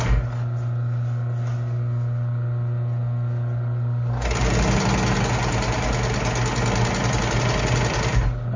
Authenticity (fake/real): real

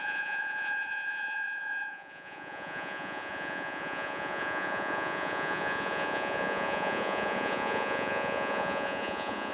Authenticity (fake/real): fake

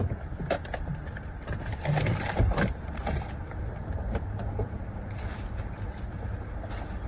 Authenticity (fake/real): real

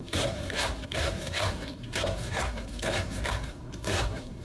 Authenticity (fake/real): fake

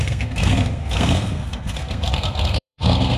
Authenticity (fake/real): fake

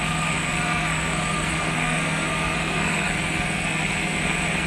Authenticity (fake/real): fake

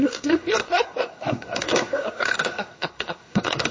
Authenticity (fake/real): fake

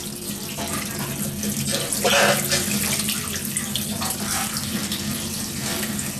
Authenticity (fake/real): real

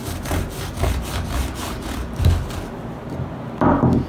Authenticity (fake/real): real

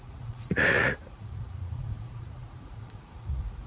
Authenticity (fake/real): fake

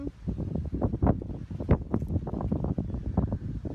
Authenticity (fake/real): real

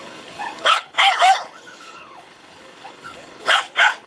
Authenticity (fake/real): fake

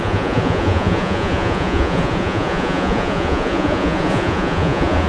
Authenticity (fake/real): fake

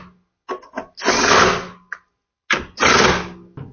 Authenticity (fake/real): real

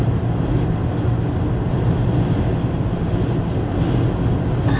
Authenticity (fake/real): real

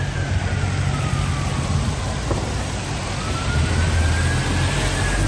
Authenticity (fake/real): real